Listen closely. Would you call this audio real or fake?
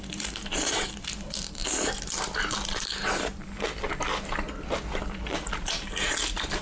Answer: real